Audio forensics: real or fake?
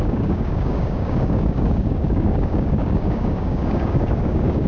fake